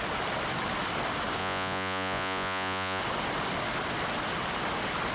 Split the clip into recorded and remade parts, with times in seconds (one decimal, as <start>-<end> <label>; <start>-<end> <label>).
0.0-1.4 recorded; 1.4-3.0 remade; 3.0-5.1 recorded